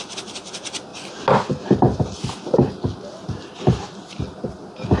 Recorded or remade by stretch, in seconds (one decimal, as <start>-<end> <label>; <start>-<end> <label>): 0.0-5.0 recorded

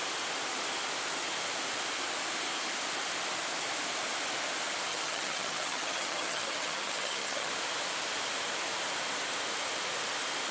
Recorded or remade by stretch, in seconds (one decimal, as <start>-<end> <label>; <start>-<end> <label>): 0.0-4.9 recorded; 4.9-7.5 remade; 7.5-10.5 recorded